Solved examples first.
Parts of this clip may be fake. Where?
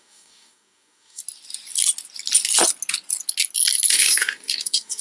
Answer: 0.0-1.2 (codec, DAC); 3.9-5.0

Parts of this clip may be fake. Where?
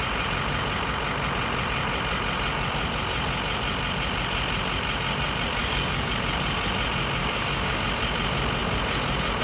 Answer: 5.6-6.1 (codec, DAC); 7.2-7.8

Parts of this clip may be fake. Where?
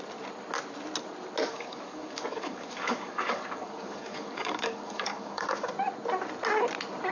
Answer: 1.4-5.7 (codec, DAC)